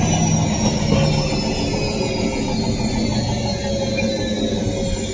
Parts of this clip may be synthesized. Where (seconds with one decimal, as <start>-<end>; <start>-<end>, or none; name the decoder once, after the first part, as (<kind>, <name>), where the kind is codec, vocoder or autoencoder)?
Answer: none